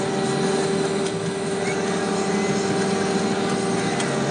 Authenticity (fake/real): real